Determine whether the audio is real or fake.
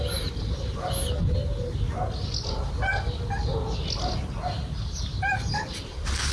real